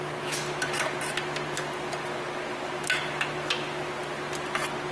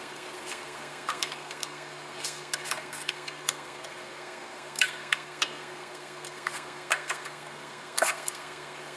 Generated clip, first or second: second